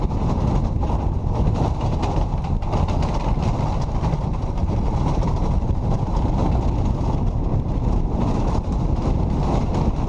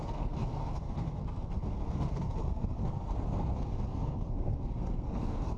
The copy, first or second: second